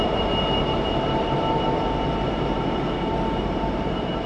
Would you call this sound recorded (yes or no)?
no